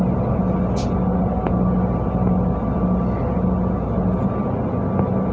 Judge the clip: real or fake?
real